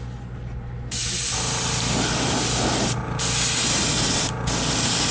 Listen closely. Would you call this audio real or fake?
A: real